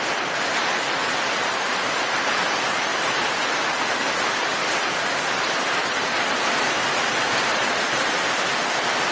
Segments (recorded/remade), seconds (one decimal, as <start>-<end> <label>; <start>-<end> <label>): 0.0-0.5 recorded; 0.5-2.4 remade; 2.4-2.9 recorded; 2.9-4.3 remade; 4.3-9.1 recorded